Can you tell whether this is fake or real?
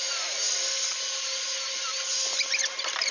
real